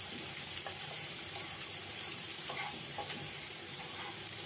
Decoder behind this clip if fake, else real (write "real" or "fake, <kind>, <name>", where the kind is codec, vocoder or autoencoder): fake, vocoder, BigVGAN v2